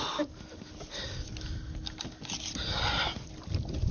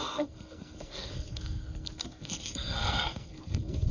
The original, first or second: first